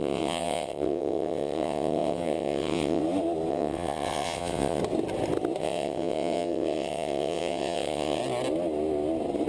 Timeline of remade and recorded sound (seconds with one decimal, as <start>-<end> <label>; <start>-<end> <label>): 0.0-3.0 remade; 3.0-3.5 recorded; 3.5-4.8 remade; 4.8-5.6 recorded; 5.6-8.2 remade; 8.2-9.5 recorded